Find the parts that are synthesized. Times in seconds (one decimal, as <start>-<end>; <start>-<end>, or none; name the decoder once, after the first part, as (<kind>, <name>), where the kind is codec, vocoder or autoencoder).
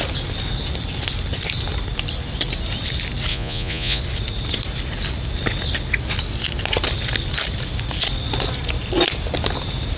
3.3-4.0 (vocoder, Vocos)